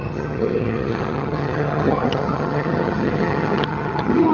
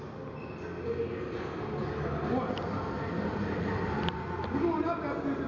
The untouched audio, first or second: second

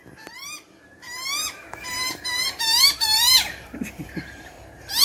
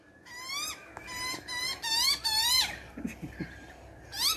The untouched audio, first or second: second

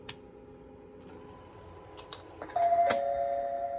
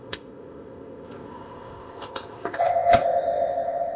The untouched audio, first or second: first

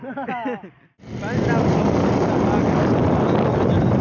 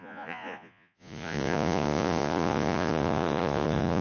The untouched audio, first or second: first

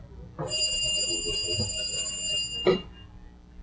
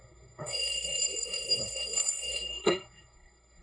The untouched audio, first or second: first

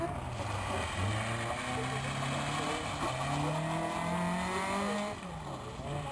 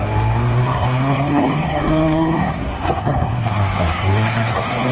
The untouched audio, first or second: first